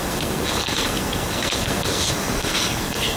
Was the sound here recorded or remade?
remade